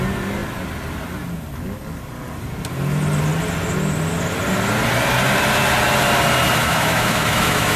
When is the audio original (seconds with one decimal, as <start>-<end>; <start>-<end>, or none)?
0.0-6.6